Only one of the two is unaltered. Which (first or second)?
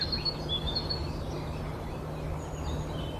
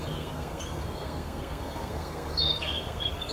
first